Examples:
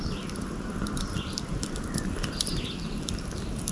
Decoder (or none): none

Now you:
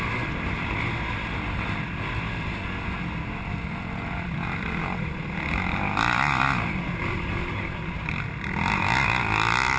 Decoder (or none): none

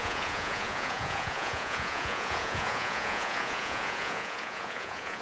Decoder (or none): vocoder, Vocos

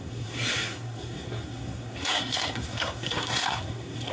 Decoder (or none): codec, SNAC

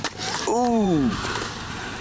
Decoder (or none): vocoder, BigVGAN v2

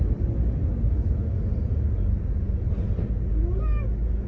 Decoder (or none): none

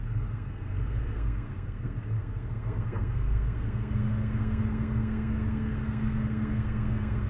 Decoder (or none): codec, SNAC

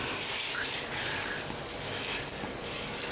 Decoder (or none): none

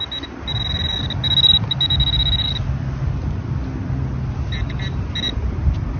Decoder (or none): none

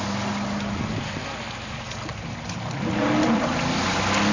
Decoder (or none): none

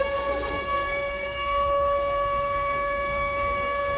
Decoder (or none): codec, SNAC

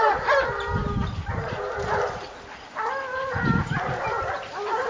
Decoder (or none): none